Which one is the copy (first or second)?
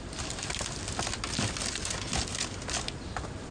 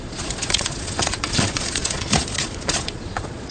second